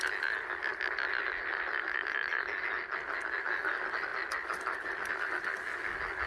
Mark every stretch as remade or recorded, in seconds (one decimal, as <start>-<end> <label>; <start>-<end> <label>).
0.0-6.3 recorded